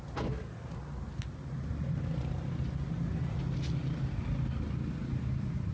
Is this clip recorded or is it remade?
recorded